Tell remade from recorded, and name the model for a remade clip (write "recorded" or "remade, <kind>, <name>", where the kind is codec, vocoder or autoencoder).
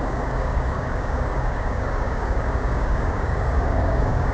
remade, codec, DAC